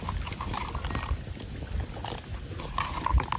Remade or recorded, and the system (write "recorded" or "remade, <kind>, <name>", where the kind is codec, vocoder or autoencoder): recorded